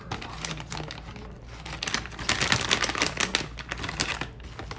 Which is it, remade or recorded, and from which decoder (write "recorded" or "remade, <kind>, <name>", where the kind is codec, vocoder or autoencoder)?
recorded